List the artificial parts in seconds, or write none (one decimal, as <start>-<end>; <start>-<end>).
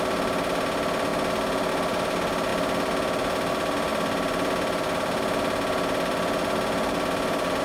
none